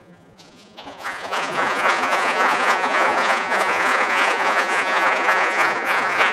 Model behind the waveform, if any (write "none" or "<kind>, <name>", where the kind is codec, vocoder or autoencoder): vocoder, Vocos